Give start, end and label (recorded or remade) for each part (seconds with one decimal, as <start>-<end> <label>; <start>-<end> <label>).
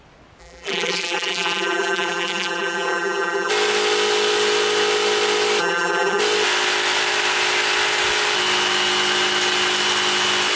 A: 0.0-0.4 recorded; 0.4-3.5 remade; 3.5-5.6 recorded; 5.6-6.2 remade; 6.2-10.6 recorded